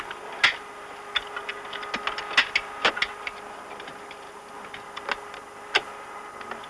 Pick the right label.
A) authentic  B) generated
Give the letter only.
A